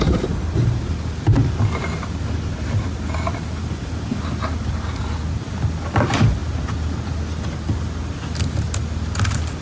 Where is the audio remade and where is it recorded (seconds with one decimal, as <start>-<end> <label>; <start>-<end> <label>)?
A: 0.0-9.6 recorded